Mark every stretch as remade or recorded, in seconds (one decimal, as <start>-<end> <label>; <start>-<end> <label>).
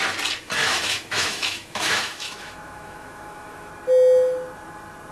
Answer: 0.0-0.6 recorded; 0.6-3.7 remade; 3.7-5.1 recorded